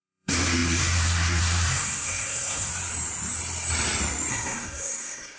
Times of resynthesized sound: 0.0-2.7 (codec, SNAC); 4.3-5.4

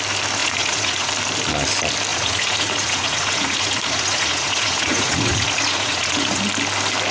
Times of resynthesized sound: 0.4-1.1 (vocoder, Vocos); 2.1-6.4

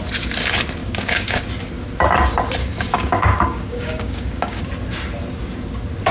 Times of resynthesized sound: 0.8-1.4 (codec, DAC); 2.6-4.6

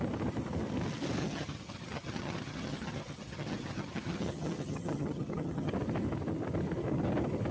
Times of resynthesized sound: 1.2-5.7 (vocoder, HiFi-GAN)